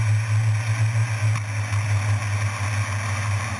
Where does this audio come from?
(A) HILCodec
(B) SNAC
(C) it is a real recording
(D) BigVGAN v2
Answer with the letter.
C